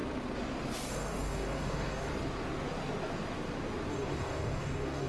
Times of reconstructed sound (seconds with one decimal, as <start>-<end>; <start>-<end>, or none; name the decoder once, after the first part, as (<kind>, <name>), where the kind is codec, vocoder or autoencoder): 0.9-2.1 (codec, DAC); 3.9-5.1